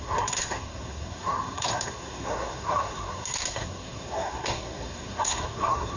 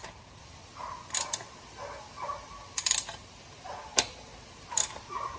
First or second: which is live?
second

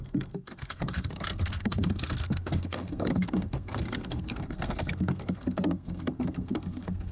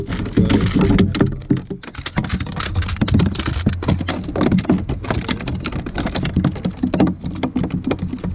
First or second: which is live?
second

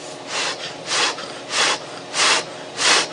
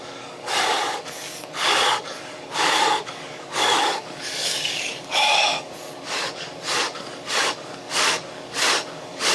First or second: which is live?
first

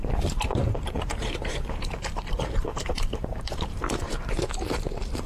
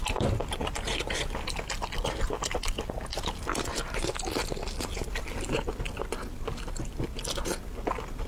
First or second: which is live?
second